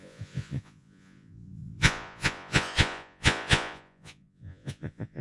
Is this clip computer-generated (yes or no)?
yes